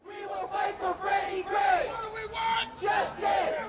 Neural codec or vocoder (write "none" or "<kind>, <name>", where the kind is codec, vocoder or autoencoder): none